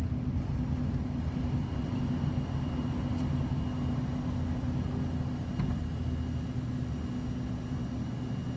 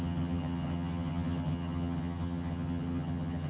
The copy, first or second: second